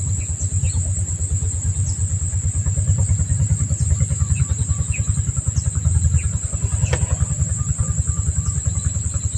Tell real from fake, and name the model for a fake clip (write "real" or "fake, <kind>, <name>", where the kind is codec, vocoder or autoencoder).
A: real